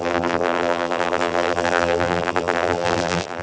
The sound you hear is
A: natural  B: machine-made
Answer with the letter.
B